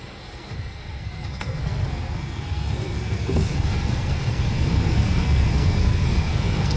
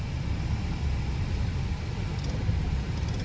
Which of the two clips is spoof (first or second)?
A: first